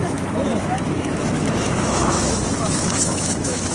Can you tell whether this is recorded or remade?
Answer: remade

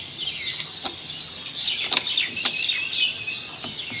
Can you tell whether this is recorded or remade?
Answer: recorded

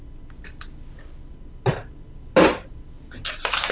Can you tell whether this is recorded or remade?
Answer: recorded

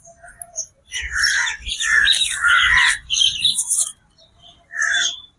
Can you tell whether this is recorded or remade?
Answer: recorded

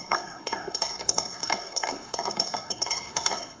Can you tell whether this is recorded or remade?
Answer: remade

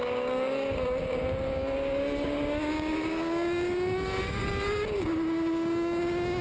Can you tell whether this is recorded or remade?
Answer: remade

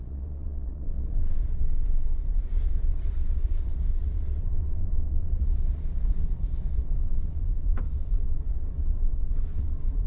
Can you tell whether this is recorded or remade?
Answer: remade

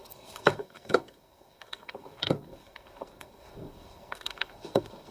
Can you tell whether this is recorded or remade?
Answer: remade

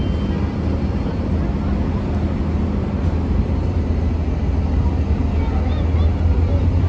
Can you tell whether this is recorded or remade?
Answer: recorded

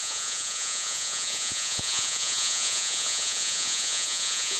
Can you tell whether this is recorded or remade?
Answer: remade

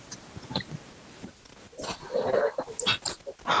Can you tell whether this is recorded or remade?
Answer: recorded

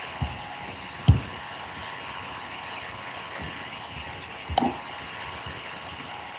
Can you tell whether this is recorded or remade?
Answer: recorded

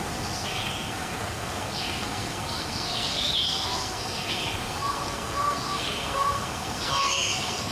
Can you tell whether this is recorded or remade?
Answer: remade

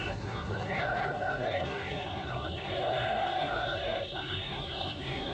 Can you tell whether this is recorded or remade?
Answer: remade